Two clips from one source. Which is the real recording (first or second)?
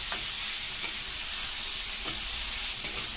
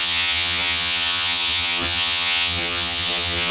first